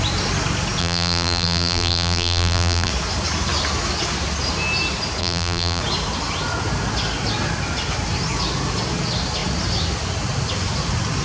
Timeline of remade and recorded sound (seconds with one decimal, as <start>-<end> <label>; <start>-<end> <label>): 0.0-0.8 recorded; 0.8-2.9 remade; 2.9-5.2 recorded; 5.2-5.8 remade; 5.8-11.2 recorded